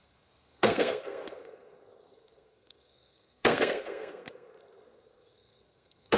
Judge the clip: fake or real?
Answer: fake